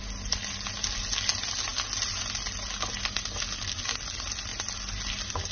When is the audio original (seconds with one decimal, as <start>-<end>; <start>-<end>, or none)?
0.0-5.5